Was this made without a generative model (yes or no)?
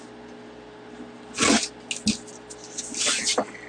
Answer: yes